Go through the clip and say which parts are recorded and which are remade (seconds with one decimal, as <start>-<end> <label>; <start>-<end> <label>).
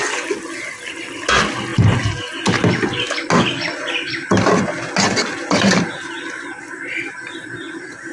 0.0-8.1 recorded